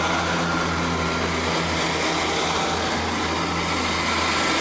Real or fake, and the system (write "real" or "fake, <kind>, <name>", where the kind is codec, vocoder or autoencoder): real